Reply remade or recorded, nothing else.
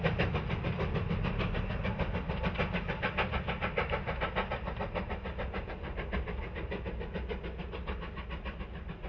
recorded